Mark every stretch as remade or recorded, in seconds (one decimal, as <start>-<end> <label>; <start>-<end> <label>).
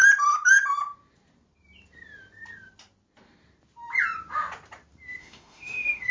0.0-5.2 recorded; 5.2-6.1 remade